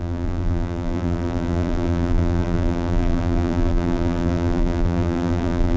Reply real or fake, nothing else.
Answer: fake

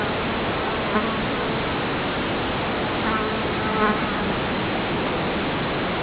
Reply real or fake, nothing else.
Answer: real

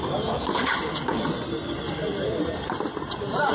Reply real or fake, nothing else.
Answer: real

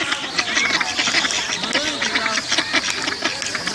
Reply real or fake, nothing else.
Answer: real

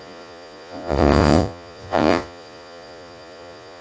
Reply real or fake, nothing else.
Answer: fake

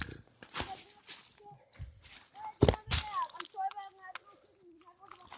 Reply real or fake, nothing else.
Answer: real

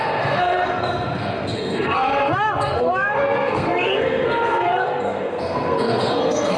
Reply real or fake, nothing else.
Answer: fake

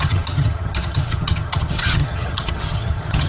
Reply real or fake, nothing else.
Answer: fake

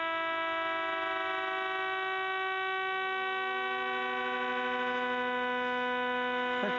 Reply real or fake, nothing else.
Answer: real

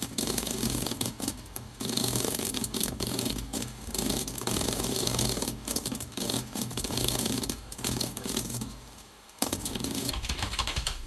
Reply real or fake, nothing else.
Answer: fake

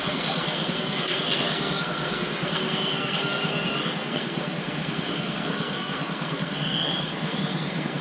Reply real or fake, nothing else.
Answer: fake